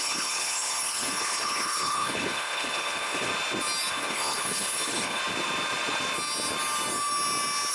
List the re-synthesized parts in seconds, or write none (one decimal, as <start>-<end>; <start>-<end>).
0.0-3.3; 3.9-5.2